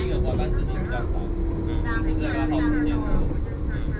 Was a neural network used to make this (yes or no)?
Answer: no